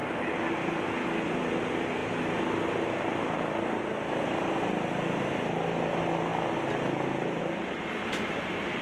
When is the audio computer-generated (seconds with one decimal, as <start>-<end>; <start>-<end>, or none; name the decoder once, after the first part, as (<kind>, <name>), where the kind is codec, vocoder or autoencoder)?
none